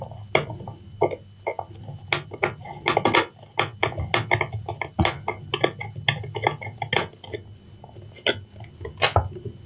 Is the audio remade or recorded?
recorded